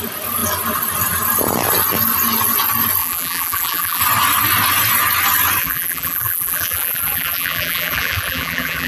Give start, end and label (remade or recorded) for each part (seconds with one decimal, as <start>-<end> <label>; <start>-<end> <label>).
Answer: 0.0-3.0 recorded; 3.0-4.0 remade; 4.0-5.6 recorded; 5.6-8.9 remade